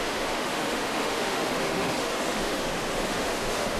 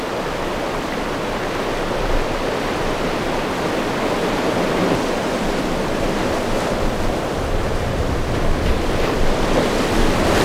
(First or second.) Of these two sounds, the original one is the second